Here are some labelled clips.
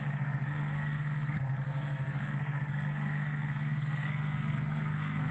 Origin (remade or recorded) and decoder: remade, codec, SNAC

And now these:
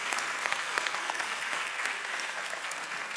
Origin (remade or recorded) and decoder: remade, codec, SNAC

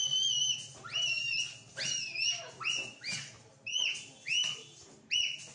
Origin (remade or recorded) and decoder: recorded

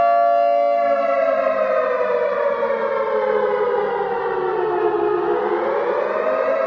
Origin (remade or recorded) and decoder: recorded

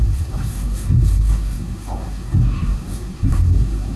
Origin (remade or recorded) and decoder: remade, codec, SNAC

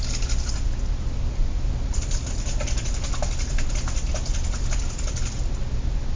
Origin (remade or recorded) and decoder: recorded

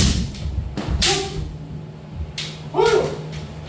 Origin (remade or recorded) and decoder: recorded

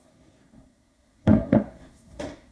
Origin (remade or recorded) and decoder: remade, codec, SNAC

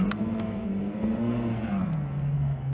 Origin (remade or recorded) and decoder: remade, codec, SNAC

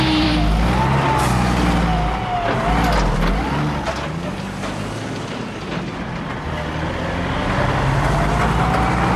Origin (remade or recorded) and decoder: recorded